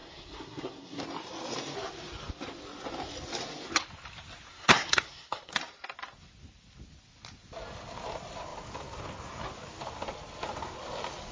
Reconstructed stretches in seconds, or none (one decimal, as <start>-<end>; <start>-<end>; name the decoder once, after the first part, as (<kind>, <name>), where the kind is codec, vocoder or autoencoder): 0.0-1.0 (codec, SNAC); 4.5-5.5